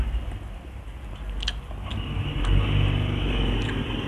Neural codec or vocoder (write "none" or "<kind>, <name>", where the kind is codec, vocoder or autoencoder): none